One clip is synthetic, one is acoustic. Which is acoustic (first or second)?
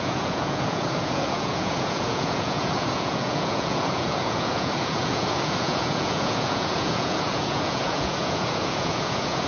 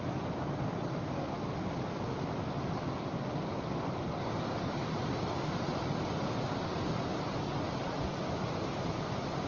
second